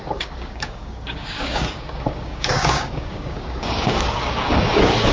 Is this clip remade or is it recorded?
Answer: remade